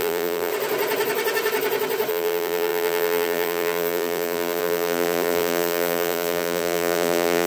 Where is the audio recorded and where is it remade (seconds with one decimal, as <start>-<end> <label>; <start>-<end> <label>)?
0.0-0.5 remade; 0.5-2.1 recorded; 2.1-7.5 remade